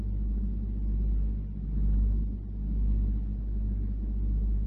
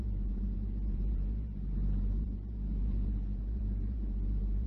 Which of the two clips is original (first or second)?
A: first